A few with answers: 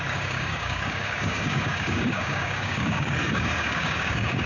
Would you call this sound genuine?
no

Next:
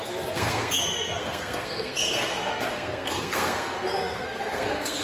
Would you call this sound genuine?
no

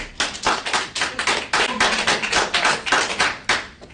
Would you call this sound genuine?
yes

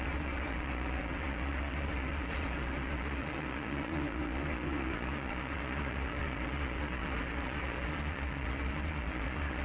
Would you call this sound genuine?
no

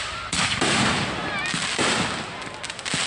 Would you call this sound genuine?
yes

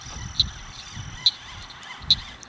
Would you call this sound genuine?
yes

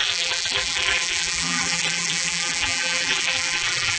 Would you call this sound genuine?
no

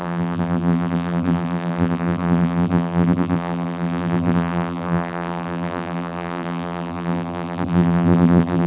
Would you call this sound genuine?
no